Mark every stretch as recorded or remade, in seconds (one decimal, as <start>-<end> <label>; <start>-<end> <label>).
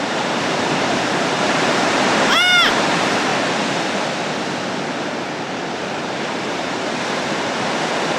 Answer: 0.0-3.3 remade; 3.3-6.0 recorded; 6.0-8.2 remade